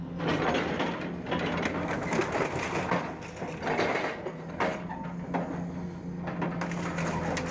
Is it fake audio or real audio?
real